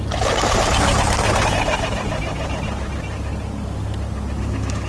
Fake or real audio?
real